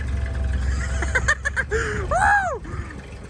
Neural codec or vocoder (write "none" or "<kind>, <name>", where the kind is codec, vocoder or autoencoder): none